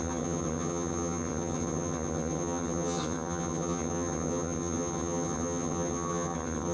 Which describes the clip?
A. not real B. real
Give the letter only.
A